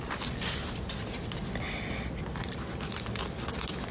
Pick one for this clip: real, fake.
real